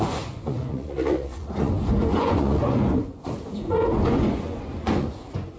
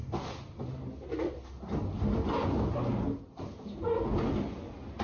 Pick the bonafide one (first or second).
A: second